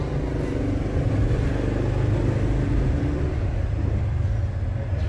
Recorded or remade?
recorded